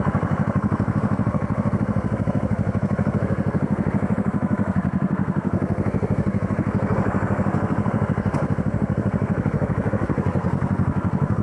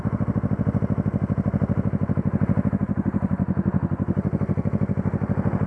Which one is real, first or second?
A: second